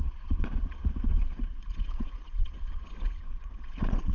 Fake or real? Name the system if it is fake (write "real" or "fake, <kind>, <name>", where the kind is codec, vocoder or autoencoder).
fake, vocoder, Vocos